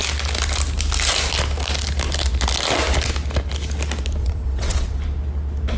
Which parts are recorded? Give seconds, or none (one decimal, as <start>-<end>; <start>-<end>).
0.0-4.2; 5.0-5.8